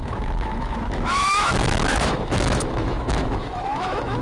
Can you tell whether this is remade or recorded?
remade